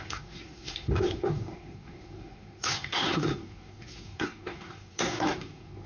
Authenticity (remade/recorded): remade